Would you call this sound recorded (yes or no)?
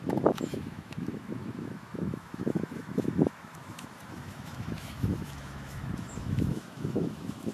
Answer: no